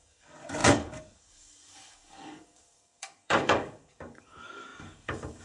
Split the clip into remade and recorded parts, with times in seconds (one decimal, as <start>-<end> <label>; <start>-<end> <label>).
0.0-5.4 remade